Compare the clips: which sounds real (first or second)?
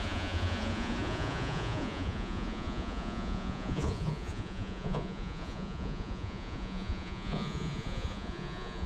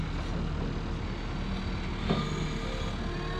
second